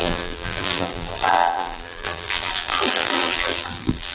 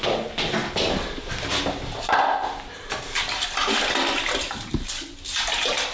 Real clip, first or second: second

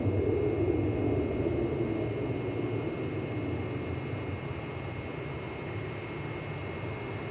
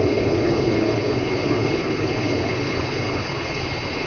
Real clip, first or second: first